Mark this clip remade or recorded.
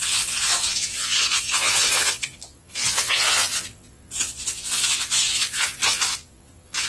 remade